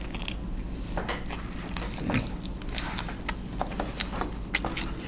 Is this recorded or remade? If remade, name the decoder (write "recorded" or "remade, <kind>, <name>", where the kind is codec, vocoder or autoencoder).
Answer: recorded